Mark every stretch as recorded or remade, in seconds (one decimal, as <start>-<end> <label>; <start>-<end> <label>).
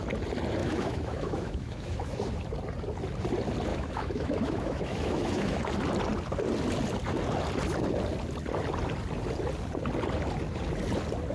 0.0-0.6 recorded; 0.6-2.1 remade; 2.1-3.7 recorded; 3.7-5.6 remade; 5.6-11.3 recorded